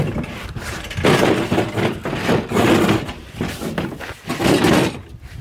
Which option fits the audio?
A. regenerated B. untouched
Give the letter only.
B